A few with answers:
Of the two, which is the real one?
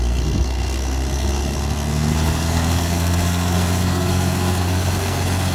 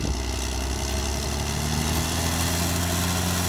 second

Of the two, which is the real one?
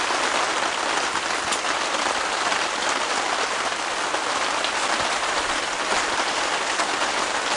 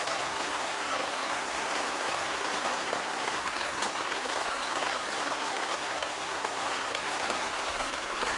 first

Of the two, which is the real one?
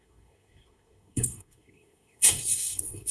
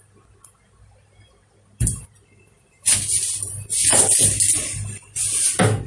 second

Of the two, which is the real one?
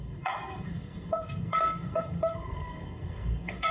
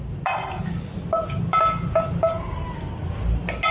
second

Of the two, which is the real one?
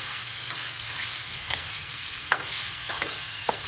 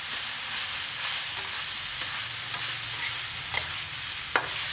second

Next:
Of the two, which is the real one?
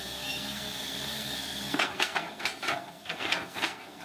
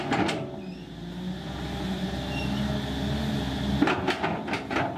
second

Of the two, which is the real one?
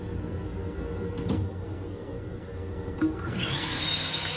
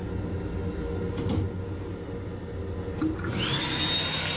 second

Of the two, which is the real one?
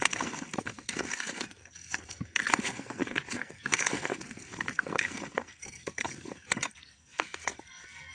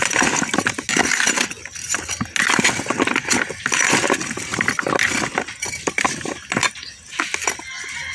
second